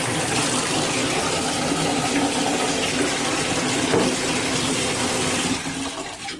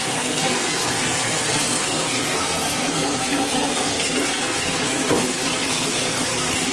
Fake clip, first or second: second